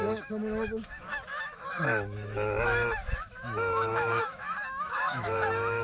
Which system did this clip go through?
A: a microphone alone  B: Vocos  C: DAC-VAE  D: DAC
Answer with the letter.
C